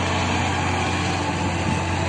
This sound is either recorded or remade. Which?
recorded